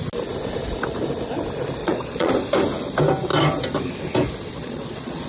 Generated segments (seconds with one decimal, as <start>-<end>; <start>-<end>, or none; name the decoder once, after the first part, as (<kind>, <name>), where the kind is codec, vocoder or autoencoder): 1.8-2.3 (vocoder, Vocos); 4.6-5.3